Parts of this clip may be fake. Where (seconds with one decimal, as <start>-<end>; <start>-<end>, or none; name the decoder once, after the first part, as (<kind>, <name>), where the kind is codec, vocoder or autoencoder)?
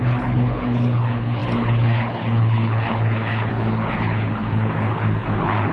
0.0-5.7 (codec, HILCodec)